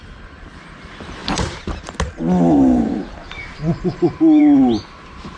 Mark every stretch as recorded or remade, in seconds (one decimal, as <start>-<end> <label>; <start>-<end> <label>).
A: 0.0-5.4 recorded